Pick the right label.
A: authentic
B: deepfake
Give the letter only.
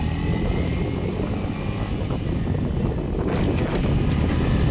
A